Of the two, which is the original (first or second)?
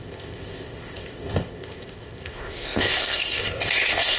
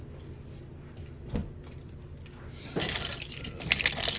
second